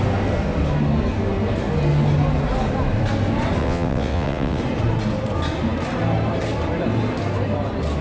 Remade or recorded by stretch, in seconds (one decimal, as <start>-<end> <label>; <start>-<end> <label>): 0.0-3.6 recorded; 3.6-4.6 remade; 4.6-8.0 recorded

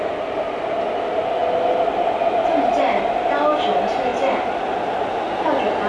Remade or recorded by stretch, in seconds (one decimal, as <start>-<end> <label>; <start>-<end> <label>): 0.0-5.9 recorded

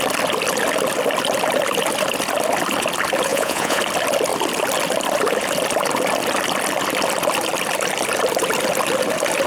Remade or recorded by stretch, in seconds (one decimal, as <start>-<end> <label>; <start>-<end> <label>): 0.0-3.3 recorded; 3.3-3.8 remade; 3.8-9.5 recorded

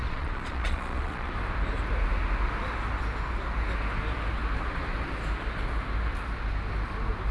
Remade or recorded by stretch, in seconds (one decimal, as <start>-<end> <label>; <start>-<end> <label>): 0.0-1.3 remade; 1.3-7.3 recorded

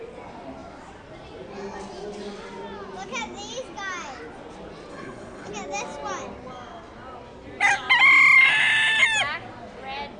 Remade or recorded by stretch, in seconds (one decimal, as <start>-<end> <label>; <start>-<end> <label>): 0.0-4.9 recorded; 4.9-5.5 remade; 5.5-10.2 recorded

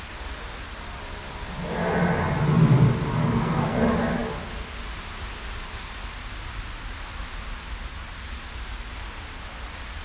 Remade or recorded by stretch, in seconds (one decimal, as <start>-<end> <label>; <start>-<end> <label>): 0.0-3.2 recorded; 3.2-3.8 remade; 3.8-10.0 recorded